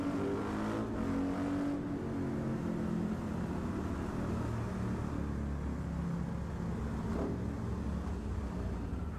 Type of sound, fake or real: real